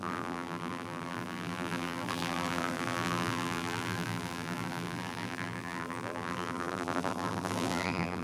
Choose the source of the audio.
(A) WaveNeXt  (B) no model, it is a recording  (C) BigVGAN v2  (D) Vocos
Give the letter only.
C